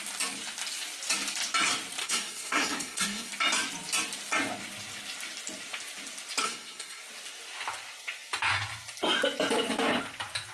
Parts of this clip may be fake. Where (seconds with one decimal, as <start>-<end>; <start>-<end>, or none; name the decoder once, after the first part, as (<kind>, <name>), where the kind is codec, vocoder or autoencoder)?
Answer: 2.0-3.3 (codec, SNAC); 6.4-7.0